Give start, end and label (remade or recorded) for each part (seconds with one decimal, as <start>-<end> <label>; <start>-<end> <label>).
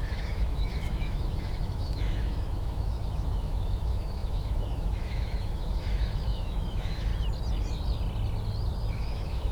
0.0-7.1 remade; 7.1-8.9 recorded; 8.9-9.5 remade